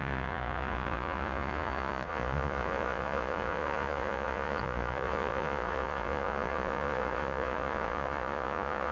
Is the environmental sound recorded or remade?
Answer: remade